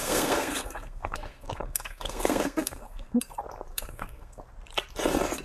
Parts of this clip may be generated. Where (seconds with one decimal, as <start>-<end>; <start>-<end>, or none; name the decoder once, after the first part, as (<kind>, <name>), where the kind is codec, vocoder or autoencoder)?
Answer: 0.0-3.2 (codec, SNAC); 3.7-4.4